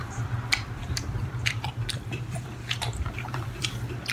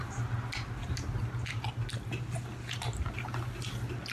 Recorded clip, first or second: second